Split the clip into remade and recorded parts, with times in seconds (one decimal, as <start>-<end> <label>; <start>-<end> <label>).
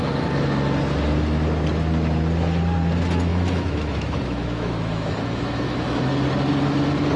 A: 0.0-3.3 recorded; 3.3-6.1 remade; 6.1-7.2 recorded